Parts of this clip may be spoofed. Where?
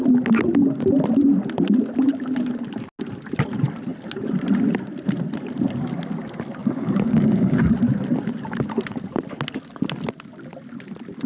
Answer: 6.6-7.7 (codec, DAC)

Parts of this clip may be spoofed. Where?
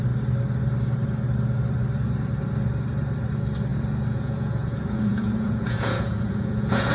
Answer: 3.7-6.9 (vocoder, Vocos)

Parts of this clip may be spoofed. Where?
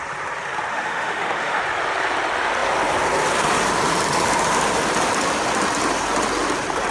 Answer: 0.7-1.6 (autoencoder, DAC-VAE)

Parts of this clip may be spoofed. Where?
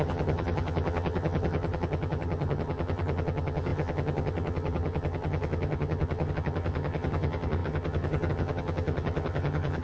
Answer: 0.0-9.8 (vocoder, HiFi-GAN)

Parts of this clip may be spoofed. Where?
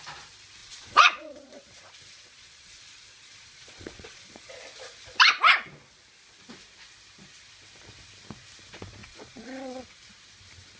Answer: 0.6-4.5 (vocoder, Vocos); 9.0-10.0